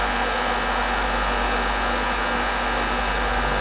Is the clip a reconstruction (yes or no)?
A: no